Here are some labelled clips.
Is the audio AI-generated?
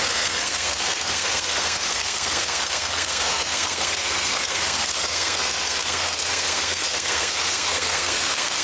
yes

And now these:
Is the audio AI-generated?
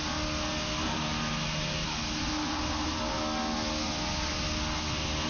no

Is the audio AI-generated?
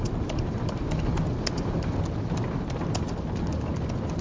no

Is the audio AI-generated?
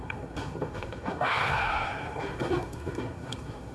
yes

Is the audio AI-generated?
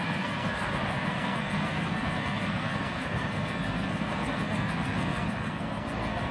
yes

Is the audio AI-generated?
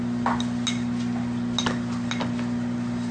no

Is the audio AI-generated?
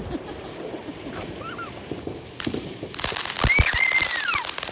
no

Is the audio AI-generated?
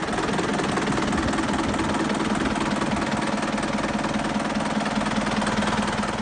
no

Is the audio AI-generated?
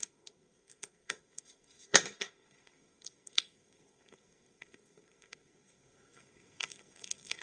yes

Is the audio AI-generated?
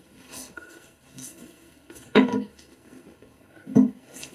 yes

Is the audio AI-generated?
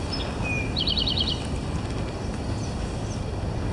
no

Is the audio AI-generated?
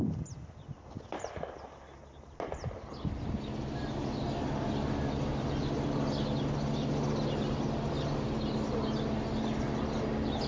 no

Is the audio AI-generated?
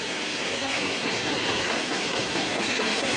yes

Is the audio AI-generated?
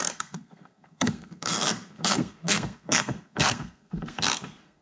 yes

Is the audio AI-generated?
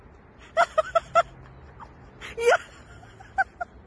no